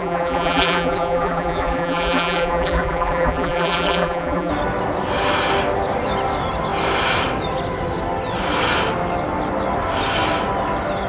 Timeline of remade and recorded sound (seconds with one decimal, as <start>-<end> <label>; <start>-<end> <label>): 0.0-4.5 remade; 4.5-11.1 recorded